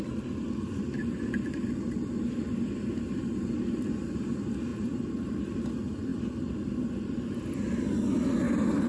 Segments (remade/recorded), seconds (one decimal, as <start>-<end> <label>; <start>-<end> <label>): 0.0-4.7 recorded; 4.7-5.4 remade; 5.4-6.1 recorded; 6.1-6.7 remade; 6.7-8.9 recorded